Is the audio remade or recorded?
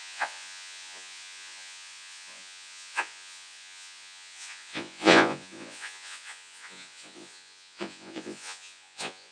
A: remade